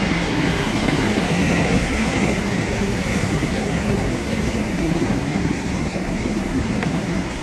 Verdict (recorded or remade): remade